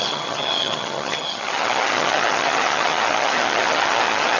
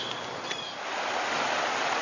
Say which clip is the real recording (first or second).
second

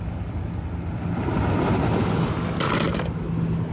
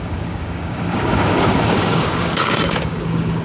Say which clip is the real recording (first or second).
first